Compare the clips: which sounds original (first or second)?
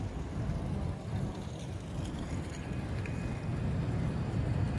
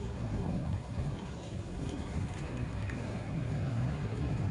first